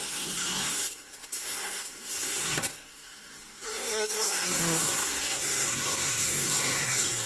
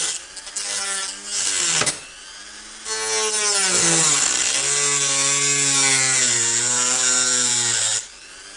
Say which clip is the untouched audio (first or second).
second